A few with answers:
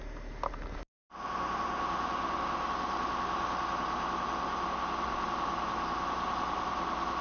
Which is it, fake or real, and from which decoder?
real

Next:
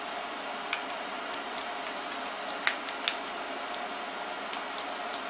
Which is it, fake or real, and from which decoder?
real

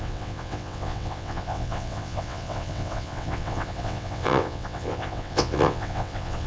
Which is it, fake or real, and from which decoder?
fake, vocoder, WaveNeXt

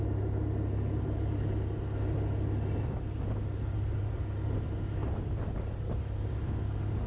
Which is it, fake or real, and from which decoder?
real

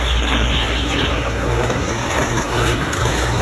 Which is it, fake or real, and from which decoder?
fake, codec, SNAC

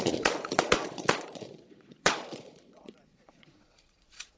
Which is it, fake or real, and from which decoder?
fake, vocoder, Vocos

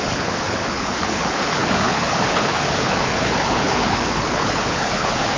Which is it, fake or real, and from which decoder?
fake, codec, HILCodec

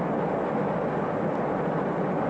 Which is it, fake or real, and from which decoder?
real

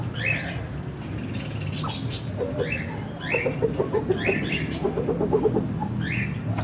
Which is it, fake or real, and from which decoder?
real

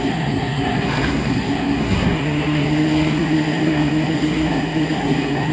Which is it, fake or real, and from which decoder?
fake, codec, SNAC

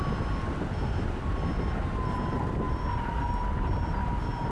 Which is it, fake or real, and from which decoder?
real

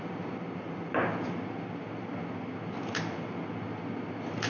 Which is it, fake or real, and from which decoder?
real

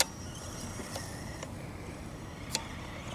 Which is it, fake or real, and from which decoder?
real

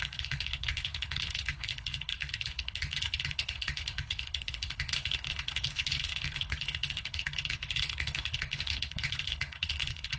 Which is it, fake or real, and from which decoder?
fake, codec, HILCodec